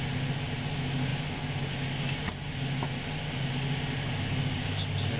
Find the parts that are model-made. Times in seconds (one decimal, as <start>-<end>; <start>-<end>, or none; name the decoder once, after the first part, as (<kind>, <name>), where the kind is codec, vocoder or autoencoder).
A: none